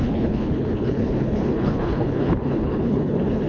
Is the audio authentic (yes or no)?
no